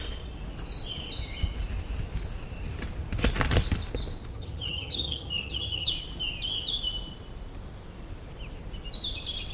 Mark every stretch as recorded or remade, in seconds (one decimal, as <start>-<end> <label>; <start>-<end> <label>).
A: 0.0-4.3 recorded; 4.3-5.9 remade; 5.9-9.5 recorded